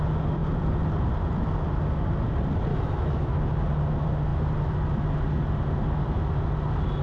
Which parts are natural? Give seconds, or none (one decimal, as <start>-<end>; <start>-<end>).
0.0-2.7; 3.3-7.0

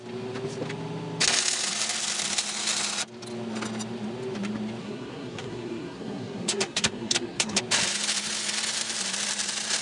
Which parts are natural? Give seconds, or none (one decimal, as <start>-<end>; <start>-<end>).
0.0-4.8; 7.6-9.8

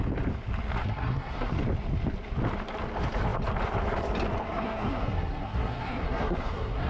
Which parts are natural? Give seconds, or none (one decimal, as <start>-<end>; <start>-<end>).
0.0-0.8; 1.5-4.4

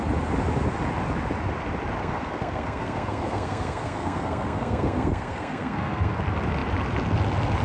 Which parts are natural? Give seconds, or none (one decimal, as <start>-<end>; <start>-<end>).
0.0-2.0; 6.1-7.6

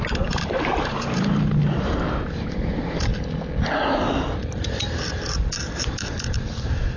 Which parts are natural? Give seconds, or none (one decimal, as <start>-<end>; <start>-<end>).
3.1-5.3

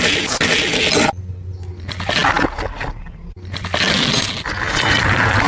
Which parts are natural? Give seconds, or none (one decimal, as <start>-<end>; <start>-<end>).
0.0-5.5